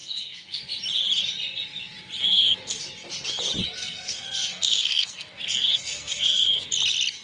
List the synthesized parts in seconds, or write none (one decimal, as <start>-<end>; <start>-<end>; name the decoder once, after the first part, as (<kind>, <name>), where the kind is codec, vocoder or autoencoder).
0.0-0.6 (codec, SNAC); 2.2-2.8; 3.8-6.7